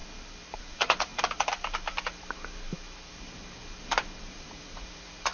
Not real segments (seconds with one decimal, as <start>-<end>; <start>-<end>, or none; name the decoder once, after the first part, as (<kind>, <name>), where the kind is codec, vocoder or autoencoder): 0.6-1.1 (vocoder, Vocos); 4.3-5.3